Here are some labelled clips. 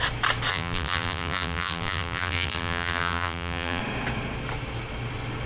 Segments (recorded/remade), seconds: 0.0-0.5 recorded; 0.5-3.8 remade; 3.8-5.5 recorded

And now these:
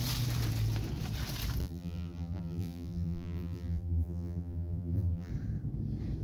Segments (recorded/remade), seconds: 0.0-1.6 recorded; 1.6-5.3 remade; 5.3-6.2 recorded

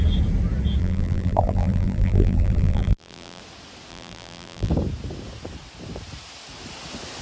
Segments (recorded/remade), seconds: 0.0-0.8 recorded; 0.8-3.4 remade; 3.4-3.9 recorded; 3.9-4.7 remade; 4.7-7.2 recorded

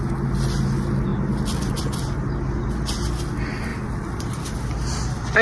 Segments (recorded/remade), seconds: 0.0-3.7 recorded; 3.7-4.5 remade; 4.5-5.4 recorded

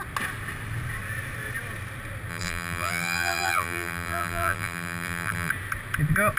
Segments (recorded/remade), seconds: 0.0-2.3 recorded; 2.3-5.5 remade; 5.5-6.4 recorded

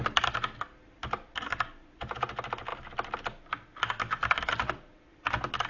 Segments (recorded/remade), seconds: 0.0-5.7 recorded

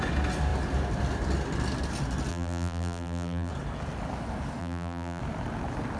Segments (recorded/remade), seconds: 0.0-2.3 recorded; 2.3-3.5 remade; 3.5-4.6 recorded; 4.6-5.2 remade; 5.2-6.0 recorded